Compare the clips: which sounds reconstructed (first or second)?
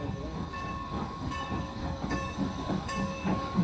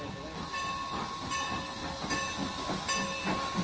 first